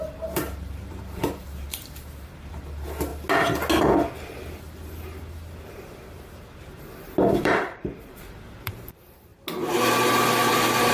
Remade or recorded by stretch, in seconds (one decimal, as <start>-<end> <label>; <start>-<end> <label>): 0.0-3.1 remade; 3.1-7.4 recorded; 7.4-9.3 remade; 9.3-10.5 recorded; 10.5-10.9 remade